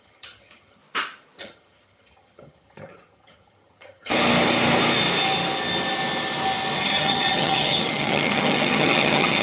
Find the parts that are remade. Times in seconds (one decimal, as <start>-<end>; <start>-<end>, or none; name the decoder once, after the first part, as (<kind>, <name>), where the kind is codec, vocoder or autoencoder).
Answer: 0.0-0.8 (vocoder, HiFi-GAN); 1.4-4.1; 6.8-9.4